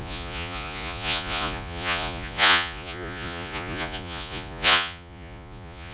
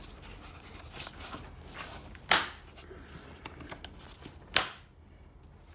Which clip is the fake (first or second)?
first